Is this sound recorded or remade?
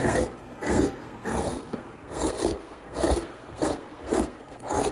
remade